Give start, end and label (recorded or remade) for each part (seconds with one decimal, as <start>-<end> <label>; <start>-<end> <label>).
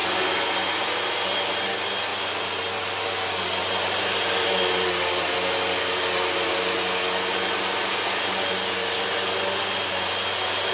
0.0-10.7 recorded